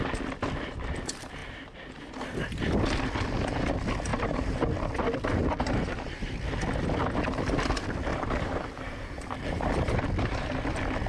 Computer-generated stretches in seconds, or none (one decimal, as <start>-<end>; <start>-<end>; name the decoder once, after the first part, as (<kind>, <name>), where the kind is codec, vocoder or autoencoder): 4.1-4.6 (vocoder, BigVGAN v2); 5.4-6.3; 8.1-9.7